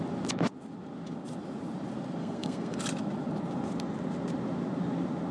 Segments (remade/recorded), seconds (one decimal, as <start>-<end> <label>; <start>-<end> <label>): 0.0-2.2 recorded; 2.2-2.8 remade; 2.8-5.3 recorded